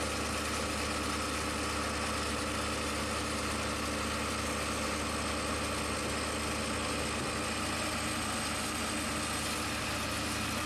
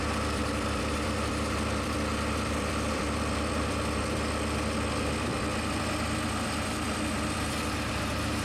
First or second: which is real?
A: first